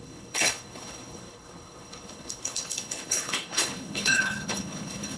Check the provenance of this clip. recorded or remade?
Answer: remade